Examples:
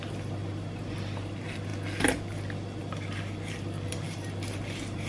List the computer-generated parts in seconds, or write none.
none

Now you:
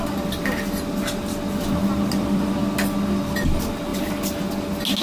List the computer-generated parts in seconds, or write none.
1.8-2.5 (vocoder, BigVGAN v2); 3.9-4.5